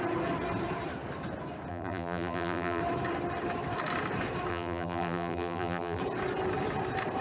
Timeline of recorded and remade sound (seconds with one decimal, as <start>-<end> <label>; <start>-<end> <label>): 0.0-1.7 recorded; 1.7-2.8 remade; 2.8-4.5 recorded; 4.5-6.0 remade; 6.0-7.2 recorded